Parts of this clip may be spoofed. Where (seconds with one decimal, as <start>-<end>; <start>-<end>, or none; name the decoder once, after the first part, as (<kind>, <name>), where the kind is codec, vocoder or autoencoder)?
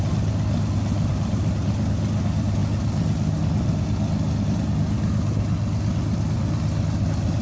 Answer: none